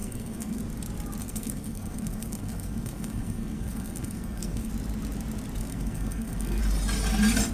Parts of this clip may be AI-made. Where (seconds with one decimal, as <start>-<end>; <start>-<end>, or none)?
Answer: 0.0-0.6; 1.2-4.7; 5.6-6.6